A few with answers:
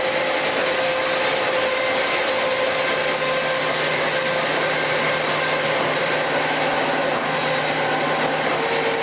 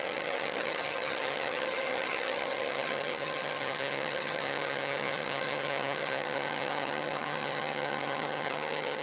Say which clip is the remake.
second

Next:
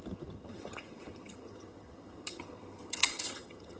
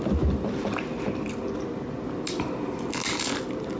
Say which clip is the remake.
first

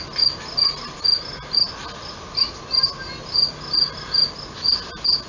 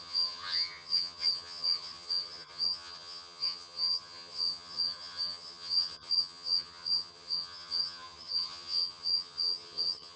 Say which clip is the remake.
second